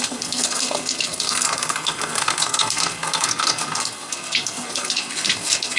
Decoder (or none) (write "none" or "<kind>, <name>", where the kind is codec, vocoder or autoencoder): codec, SNAC